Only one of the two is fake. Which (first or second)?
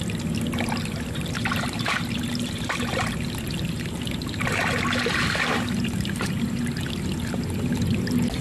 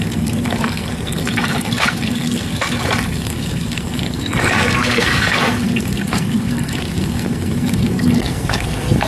second